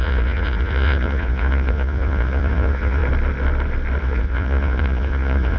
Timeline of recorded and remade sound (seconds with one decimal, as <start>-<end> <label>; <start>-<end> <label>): 0.0-3.0 remade; 3.0-4.0 recorded; 4.0-5.6 remade